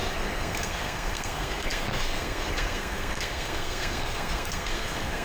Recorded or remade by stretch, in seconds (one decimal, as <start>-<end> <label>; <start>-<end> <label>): 0.0-5.2 remade